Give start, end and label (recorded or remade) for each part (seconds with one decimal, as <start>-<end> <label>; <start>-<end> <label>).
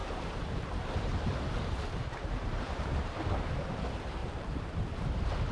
0.0-3.2 remade; 3.2-4.2 recorded; 4.2-4.7 remade; 4.7-5.5 recorded